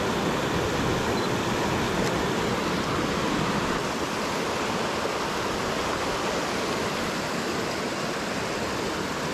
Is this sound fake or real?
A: real